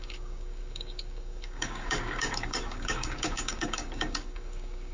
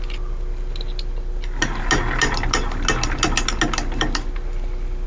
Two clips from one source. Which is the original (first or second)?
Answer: second